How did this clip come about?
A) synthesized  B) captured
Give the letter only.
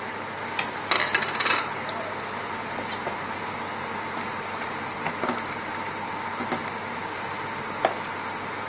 B